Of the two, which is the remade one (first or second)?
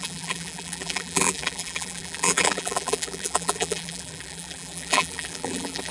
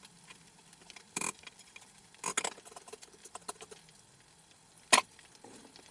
first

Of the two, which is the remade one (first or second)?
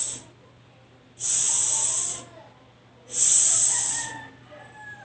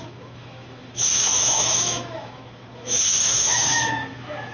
second